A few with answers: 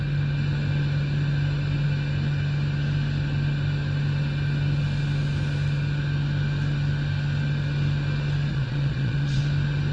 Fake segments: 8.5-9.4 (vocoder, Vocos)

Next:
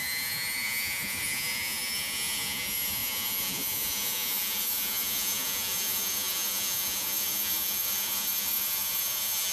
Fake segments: 0.0-9.5 (vocoder, Vocos)

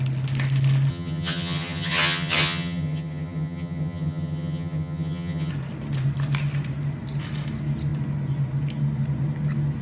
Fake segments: 0.9-5.5 (vocoder, HiFi-GAN)